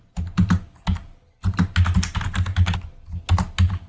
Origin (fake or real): real